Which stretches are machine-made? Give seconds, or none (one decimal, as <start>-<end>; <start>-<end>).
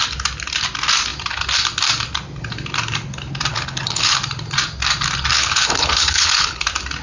3.5-4.2; 5.3-6.6